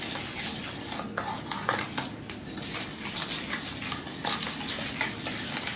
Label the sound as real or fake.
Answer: real